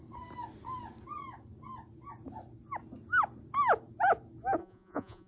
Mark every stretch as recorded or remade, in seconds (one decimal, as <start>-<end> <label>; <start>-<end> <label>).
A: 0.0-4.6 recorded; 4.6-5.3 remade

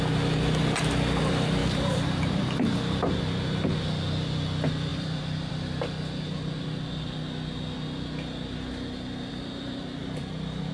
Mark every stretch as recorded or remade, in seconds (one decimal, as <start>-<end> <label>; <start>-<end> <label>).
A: 0.0-1.6 recorded; 1.6-3.6 remade; 3.6-4.9 recorded; 4.9-5.5 remade; 5.5-10.0 recorded; 10.0-10.7 remade

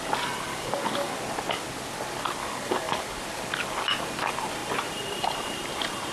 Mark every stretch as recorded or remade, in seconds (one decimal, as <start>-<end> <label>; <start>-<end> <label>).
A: 0.0-0.5 recorded; 0.5-1.2 remade; 1.2-2.4 recorded; 2.4-3.2 remade; 3.2-6.1 recorded